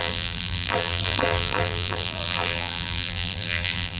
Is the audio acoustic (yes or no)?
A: no